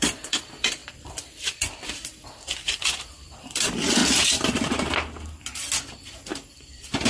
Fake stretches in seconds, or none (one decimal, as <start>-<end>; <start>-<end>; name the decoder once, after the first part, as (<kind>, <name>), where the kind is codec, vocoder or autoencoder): 0.0-4.0 (vocoder, BigVGAN v2); 6.3-7.1